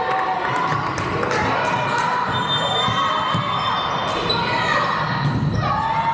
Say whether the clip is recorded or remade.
recorded